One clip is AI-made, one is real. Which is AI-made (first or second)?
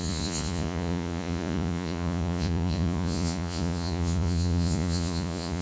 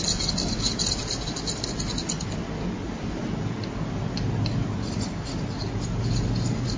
first